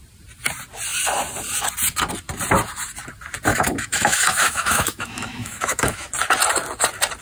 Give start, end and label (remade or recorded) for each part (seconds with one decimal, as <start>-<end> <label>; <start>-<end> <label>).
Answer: 0.0-3.5 recorded; 3.5-6.1 remade; 6.1-7.2 recorded